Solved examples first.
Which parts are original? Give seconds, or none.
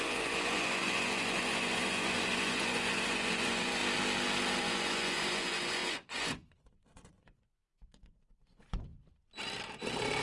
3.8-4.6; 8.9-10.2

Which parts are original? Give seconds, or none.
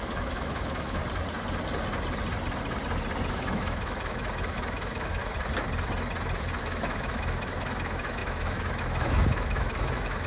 1.0-3.3; 5.2-6.6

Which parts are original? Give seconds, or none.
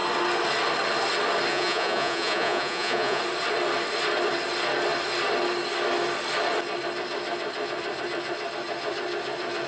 0.0-1.5; 3.2-9.7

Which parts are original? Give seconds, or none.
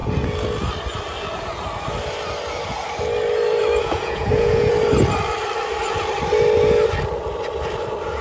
0.0-3.8; 4.7-8.2